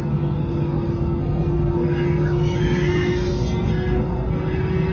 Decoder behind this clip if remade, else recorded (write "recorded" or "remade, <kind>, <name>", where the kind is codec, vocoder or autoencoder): remade, codec, SNAC